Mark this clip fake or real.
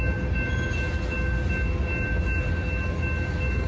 real